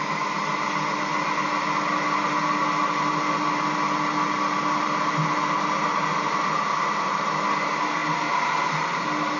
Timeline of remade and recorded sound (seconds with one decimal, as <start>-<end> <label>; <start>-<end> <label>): 0.0-9.4 recorded